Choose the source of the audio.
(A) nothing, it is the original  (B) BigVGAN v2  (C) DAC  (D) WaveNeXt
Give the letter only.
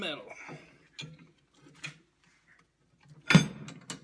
A